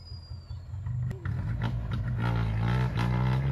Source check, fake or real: real